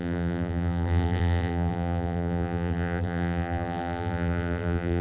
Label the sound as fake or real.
fake